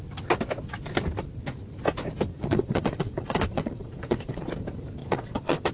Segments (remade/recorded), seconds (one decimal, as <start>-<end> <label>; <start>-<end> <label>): 0.0-2.3 recorded; 2.3-4.5 remade; 4.5-5.0 recorded; 5.0-5.7 remade